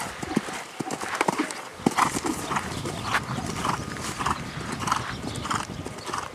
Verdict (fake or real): real